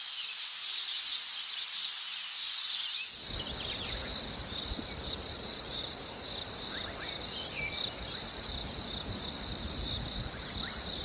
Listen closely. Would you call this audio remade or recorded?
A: recorded